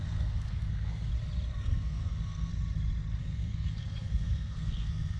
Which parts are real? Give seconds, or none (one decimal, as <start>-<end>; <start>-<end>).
1.1-1.6; 2.5-3.2